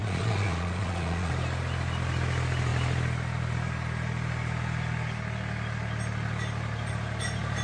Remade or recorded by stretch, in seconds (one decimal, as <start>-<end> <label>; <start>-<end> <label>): 0.0-1.3 remade; 1.3-7.6 recorded